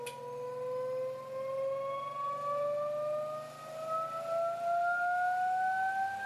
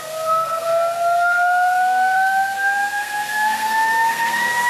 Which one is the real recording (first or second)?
first